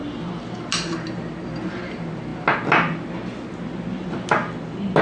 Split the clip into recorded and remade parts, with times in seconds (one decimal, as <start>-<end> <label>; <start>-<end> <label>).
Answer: 0.0-5.0 recorded